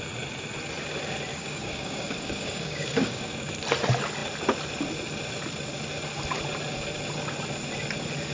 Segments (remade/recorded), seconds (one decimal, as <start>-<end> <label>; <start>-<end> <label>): 0.0-1.3 recorded; 1.3-3.5 remade; 3.5-8.3 recorded